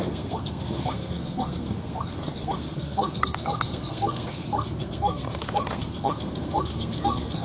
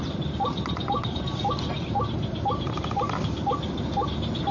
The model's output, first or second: first